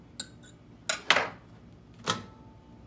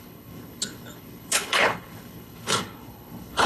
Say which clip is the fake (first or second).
second